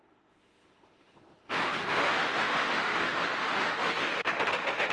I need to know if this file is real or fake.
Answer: fake